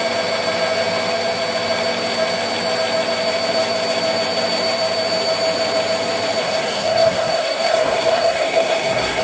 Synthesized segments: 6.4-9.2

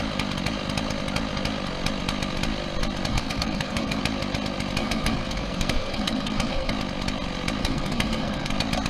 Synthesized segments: 3.1-4.0; 4.8-6.7; 7.6-8.5

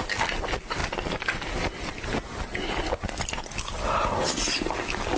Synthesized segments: none